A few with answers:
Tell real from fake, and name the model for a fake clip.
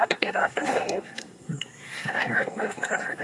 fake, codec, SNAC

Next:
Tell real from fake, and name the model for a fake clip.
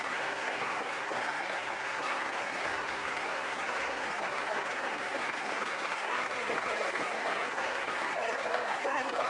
fake, codec, SNAC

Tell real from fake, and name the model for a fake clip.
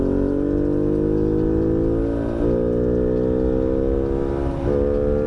real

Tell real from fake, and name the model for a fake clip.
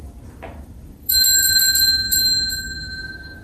fake, vocoder, BigVGAN v2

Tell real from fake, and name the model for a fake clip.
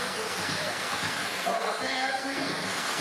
fake, codec, SNAC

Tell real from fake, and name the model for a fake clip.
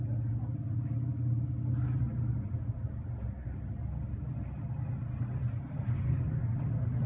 real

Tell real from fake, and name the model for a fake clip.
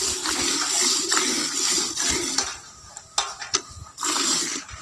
real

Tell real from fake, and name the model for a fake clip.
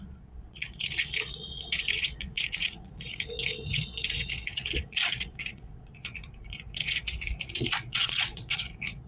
fake, vocoder, Vocos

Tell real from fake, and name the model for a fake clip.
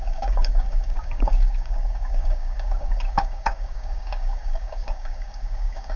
fake, codec, DAC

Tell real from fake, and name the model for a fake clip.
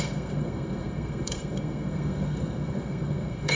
fake, codec, SNAC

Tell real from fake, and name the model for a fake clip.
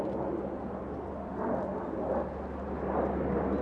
real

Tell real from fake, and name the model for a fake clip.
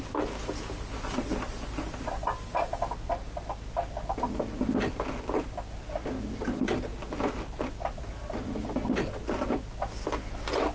real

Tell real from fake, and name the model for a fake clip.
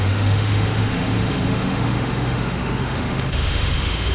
fake, autoencoder, DAC-VAE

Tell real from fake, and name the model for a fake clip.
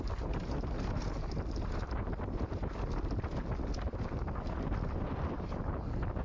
real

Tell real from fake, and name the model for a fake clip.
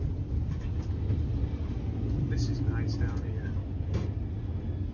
real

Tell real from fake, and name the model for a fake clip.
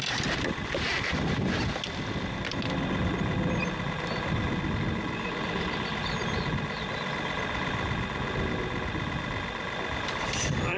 real